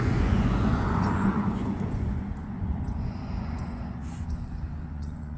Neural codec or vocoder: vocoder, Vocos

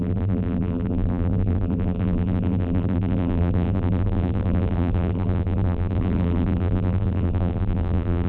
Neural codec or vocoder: vocoder, BigVGAN v2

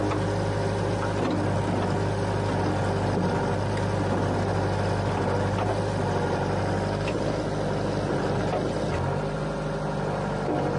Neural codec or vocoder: none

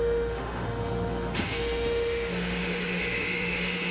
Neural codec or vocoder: autoencoder, DAC-VAE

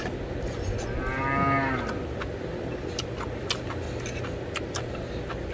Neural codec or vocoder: none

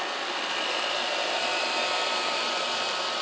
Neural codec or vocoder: vocoder, BigVGAN v2